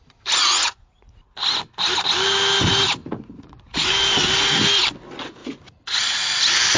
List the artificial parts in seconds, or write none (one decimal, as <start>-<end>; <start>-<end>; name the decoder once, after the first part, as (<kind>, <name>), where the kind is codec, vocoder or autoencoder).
0.4-1.2 (vocoder, Vocos); 3.0-3.9; 5.4-6.1